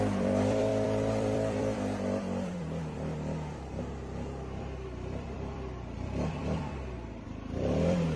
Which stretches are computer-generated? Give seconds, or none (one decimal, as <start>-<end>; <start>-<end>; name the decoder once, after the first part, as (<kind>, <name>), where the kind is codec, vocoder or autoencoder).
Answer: 0.0-8.2 (vocoder, BigVGAN v2)